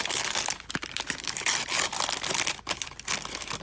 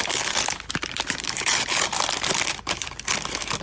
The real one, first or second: first